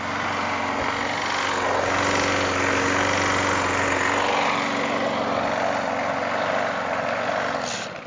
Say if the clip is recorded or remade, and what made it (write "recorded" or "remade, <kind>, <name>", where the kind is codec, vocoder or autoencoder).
recorded